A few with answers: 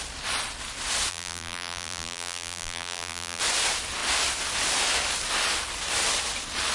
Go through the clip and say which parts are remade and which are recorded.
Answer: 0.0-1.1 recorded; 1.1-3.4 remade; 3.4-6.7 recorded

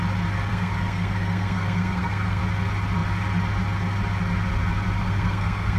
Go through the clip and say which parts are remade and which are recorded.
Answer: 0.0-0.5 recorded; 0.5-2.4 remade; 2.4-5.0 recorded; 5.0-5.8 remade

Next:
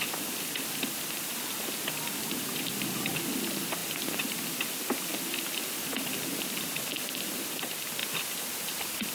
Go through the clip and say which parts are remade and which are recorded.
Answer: 0.0-9.1 recorded

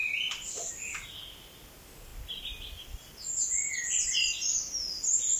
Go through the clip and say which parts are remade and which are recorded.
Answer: 0.0-0.7 remade; 0.7-5.4 recorded